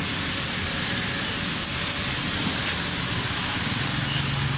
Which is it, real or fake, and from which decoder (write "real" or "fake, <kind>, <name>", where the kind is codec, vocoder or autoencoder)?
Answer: real